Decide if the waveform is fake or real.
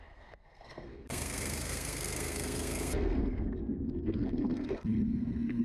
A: fake